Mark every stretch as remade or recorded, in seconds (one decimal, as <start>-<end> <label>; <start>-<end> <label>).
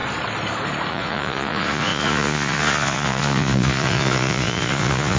0.0-0.9 recorded; 0.9-5.2 remade